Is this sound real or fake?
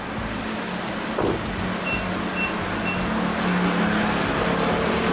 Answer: real